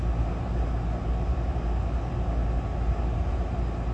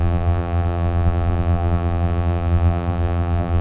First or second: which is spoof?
second